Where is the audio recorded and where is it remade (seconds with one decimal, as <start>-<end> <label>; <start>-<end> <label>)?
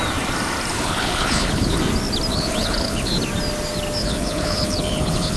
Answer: 0.0-0.7 recorded; 0.7-1.8 remade; 1.8-2.3 recorded; 2.3-3.1 remade; 3.1-4.0 recorded; 4.0-5.4 remade